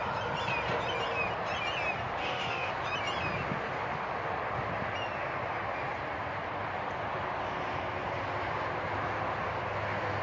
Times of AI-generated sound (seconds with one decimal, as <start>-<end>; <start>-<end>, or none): 2.2-2.7